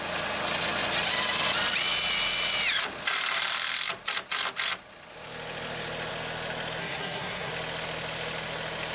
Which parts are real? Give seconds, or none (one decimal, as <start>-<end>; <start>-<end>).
0.0-6.8; 7.5-8.9